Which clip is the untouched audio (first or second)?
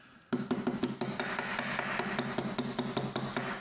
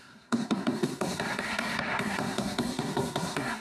first